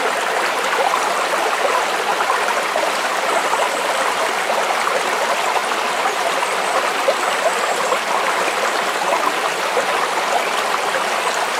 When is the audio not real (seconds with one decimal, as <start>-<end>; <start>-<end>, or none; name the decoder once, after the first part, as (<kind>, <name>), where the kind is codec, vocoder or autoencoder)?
2.1-4.8 (vocoder, BigVGAN v2)